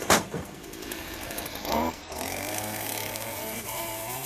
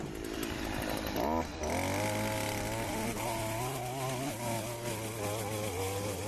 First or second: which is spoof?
first